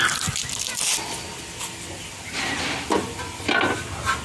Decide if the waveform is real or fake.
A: real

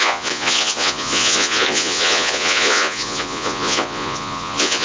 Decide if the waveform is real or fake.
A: fake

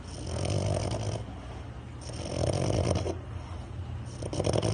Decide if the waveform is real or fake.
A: real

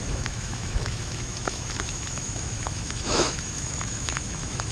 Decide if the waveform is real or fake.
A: fake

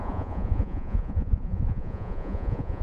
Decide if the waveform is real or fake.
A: fake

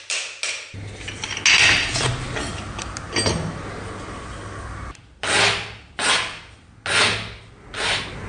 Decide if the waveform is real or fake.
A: real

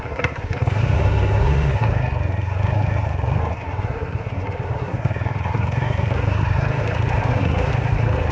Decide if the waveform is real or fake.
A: fake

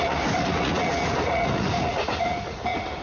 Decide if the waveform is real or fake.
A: fake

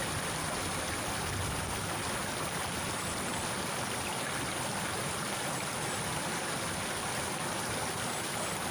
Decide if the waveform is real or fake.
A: real